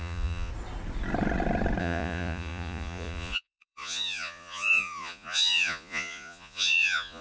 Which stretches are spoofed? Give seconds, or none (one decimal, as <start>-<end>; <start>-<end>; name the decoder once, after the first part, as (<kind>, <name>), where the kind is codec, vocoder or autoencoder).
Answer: 0.0-0.5 (vocoder, Vocos); 1.8-7.2